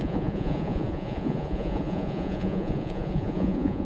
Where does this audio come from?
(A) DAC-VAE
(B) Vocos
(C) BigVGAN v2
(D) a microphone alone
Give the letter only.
B